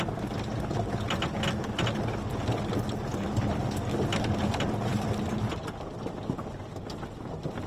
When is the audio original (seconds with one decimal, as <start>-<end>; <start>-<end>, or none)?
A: 0.0-3.1; 3.6-4.9; 6.0-7.7

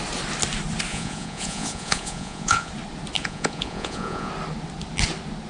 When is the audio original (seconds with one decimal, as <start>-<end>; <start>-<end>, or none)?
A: 0.0-0.9; 2.7-3.2; 4.3-5.5

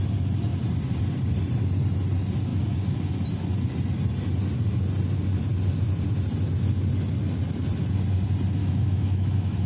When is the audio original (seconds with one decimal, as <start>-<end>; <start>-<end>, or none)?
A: 0.0-8.6

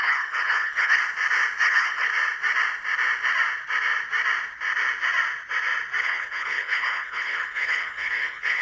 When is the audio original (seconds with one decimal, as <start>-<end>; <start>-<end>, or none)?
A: 1.0-1.6; 2.1-6.0